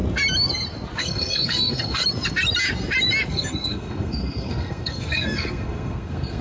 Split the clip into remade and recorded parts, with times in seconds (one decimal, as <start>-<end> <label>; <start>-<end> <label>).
0.0-1.0 recorded; 1.0-2.0 remade; 2.0-3.3 recorded; 3.3-6.4 remade